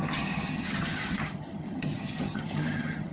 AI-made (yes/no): yes